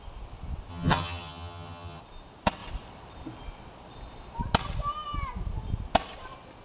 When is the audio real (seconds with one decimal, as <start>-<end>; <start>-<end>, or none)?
0.0-0.7; 2.0-6.6